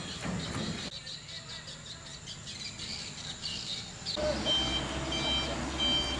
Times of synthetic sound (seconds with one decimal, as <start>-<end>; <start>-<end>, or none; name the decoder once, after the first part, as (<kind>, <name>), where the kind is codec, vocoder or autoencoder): none